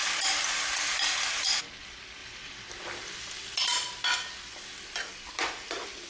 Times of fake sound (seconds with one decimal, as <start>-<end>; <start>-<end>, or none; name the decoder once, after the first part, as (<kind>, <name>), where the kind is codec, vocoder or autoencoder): 2.2-2.9 (vocoder, BigVGAN v2)